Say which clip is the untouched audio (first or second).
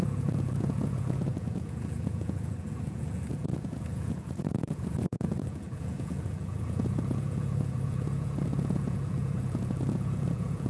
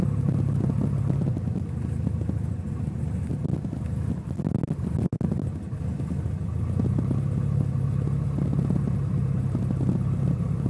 second